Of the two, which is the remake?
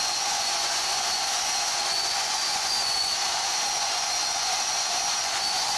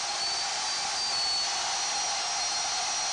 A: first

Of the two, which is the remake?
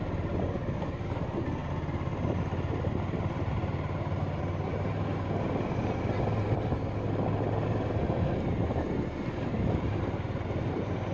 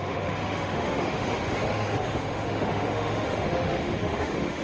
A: second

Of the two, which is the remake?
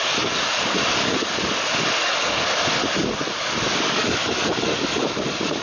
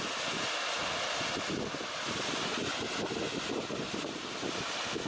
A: first